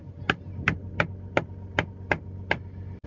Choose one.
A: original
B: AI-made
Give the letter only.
A